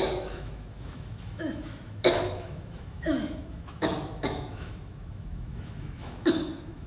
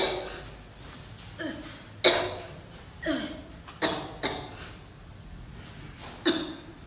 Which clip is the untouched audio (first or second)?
second